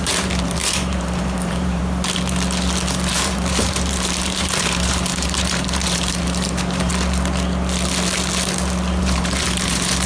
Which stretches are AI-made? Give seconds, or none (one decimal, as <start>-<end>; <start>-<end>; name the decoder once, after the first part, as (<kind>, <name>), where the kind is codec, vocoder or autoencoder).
0.0-1.8 (vocoder, BigVGAN v2); 3.1-6.9; 9.0-10.1

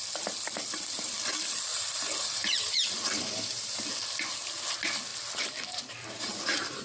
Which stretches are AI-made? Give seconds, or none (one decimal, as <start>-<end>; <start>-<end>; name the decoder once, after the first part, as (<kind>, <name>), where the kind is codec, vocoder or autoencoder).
1.7-3.9 (vocoder, BigVGAN v2)

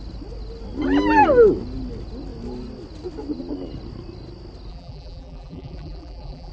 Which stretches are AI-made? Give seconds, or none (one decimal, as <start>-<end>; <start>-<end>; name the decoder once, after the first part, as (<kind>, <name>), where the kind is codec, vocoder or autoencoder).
4.7-6.5 (vocoder, BigVGAN v2)

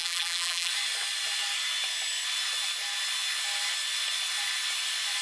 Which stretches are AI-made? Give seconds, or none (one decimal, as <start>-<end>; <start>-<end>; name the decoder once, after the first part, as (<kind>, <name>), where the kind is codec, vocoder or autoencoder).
0.0-0.7 (vocoder, BigVGAN v2)

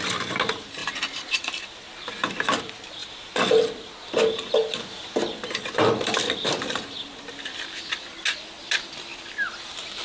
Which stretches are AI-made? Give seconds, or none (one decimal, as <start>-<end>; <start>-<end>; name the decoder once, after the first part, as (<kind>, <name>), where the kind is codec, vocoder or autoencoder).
none